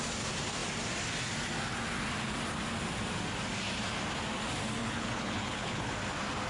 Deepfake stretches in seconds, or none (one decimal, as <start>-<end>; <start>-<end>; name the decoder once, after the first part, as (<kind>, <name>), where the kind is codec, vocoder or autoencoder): 4.8-5.9 (codec, HILCodec)